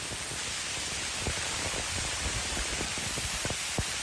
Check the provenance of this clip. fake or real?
real